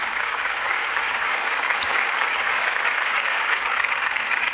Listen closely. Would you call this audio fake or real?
fake